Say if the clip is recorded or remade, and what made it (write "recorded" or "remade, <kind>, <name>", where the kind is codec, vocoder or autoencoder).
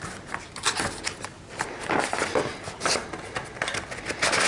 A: recorded